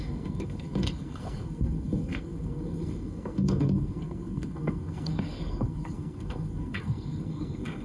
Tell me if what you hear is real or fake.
fake